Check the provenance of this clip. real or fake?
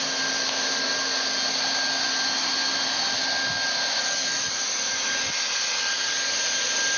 real